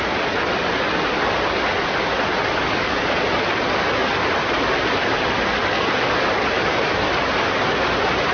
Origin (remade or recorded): recorded